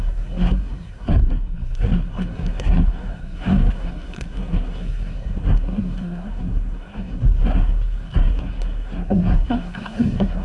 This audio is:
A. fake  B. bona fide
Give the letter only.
A